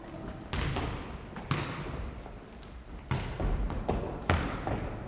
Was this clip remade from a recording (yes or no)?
no